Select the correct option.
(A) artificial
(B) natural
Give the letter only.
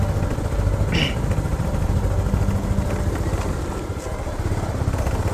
B